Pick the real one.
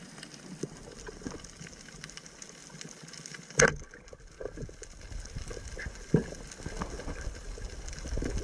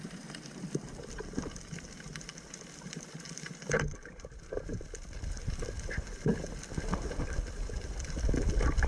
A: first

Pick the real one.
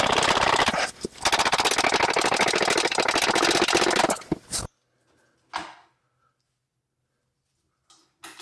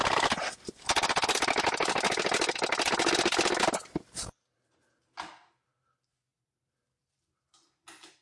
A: first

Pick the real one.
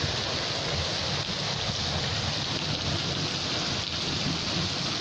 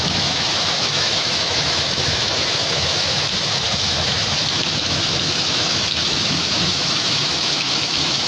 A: first